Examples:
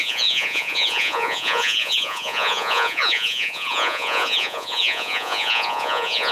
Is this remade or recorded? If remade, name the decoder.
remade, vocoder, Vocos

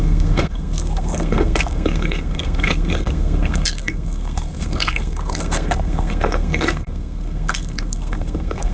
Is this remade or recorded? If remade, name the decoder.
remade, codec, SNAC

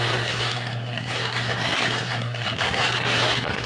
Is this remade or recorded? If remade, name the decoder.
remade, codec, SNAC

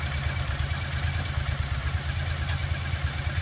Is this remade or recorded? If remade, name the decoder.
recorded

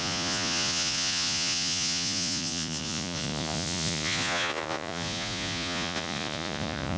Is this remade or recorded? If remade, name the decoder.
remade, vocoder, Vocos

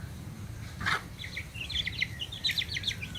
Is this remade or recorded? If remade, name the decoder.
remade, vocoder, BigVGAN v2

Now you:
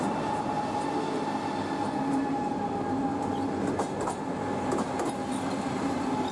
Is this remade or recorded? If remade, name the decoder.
recorded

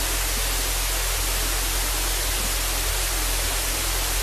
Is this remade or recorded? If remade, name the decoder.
recorded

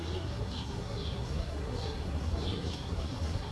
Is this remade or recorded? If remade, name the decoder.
remade, codec, SNAC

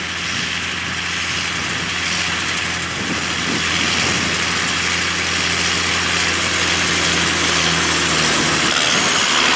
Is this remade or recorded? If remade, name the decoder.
recorded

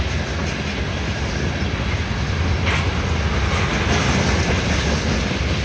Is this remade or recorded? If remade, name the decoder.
recorded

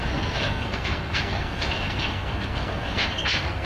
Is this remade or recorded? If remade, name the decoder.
remade, codec, SNAC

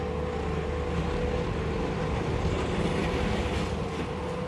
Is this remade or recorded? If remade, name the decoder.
recorded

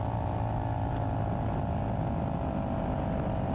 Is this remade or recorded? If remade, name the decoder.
recorded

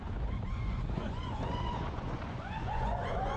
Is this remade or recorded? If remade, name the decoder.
remade, vocoder, Vocos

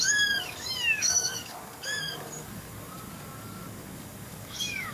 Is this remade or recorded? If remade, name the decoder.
remade, codec, DAC